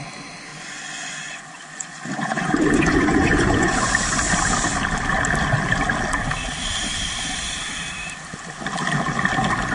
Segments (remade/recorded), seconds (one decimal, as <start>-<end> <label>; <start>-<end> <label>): 0.0-0.5 recorded; 0.5-3.9 remade; 3.9-9.7 recorded